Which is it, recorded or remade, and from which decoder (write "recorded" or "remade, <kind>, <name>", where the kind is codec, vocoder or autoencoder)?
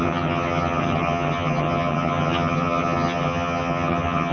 remade, vocoder, HiFi-GAN